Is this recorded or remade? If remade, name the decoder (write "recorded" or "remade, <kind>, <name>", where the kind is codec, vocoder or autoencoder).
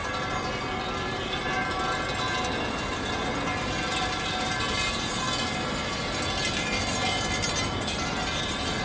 recorded